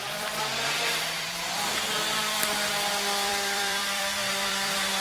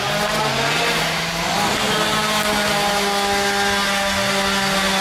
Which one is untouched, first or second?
second